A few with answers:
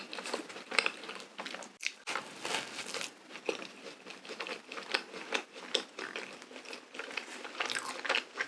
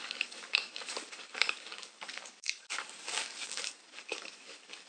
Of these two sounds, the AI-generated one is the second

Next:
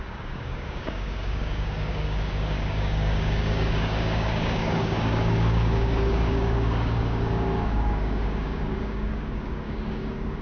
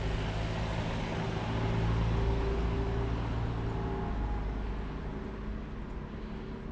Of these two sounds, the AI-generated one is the first